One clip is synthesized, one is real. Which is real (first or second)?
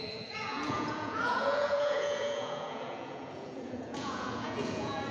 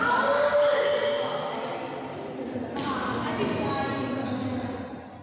second